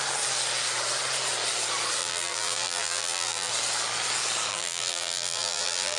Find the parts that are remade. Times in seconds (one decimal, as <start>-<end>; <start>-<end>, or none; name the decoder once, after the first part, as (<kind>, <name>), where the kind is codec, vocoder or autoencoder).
2.0-3.5 (vocoder, BigVGAN v2); 4.5-6.0